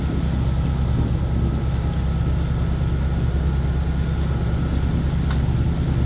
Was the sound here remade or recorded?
recorded